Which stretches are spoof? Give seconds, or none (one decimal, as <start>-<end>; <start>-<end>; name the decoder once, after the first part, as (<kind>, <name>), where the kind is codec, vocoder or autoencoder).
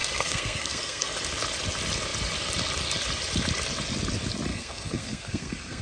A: 0.0-1.1 (codec, SNAC); 4.5-5.8